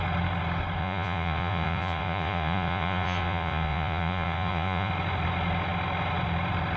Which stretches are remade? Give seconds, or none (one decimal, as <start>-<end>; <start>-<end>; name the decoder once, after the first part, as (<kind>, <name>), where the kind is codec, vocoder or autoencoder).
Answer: 0.8-4.9 (vocoder, Vocos)